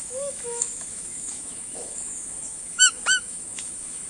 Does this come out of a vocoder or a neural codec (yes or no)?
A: yes